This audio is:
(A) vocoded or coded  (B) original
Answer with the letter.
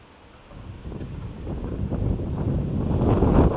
B